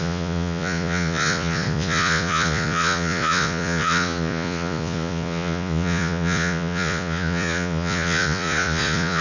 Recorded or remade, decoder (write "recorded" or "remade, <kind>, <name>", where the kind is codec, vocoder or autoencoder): remade, vocoder, Vocos